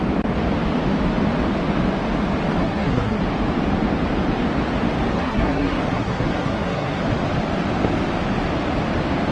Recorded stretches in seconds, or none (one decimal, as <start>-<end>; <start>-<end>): 0.0-2.6; 3.2-5.1; 7.0-9.3

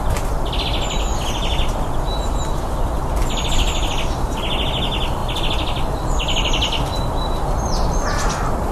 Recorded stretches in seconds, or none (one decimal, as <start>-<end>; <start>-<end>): 0.0-8.7

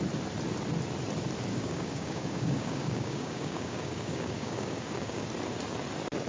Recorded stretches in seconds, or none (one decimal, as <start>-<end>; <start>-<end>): 0.0-1.5; 5.3-6.3

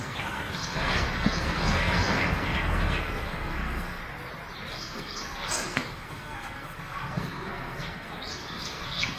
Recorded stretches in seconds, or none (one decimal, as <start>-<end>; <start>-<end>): 4.0-4.7

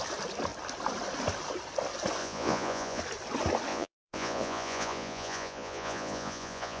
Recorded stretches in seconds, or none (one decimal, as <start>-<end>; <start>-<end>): 0.0-2.2; 3.0-3.7

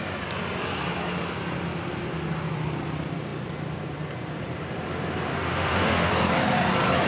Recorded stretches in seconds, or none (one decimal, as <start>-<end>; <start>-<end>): 0.0-5.3; 6.1-7.1

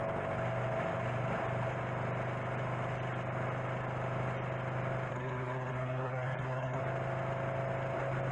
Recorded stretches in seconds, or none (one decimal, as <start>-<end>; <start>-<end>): 0.0-5.1; 6.8-8.3

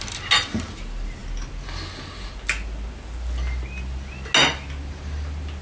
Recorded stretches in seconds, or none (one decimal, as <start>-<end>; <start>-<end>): 0.0-5.6